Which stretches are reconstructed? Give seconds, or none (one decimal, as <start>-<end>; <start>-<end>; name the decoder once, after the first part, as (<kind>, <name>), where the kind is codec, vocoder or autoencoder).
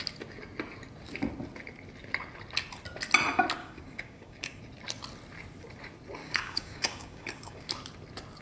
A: 3.6-4.6 (codec, DAC); 6.2-7.7